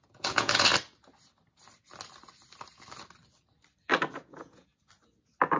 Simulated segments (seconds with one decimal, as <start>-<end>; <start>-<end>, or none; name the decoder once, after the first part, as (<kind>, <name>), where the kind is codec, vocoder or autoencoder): 0.0-0.7 (vocoder, Vocos); 4.1-4.7